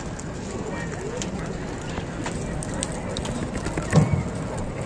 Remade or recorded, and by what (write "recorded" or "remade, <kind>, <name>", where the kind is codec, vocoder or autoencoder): recorded